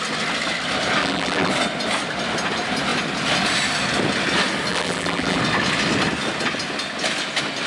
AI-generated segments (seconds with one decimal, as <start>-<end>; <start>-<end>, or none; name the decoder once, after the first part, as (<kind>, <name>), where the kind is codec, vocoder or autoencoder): 1.0-1.5 (vocoder, BigVGAN v2); 4.7-5.4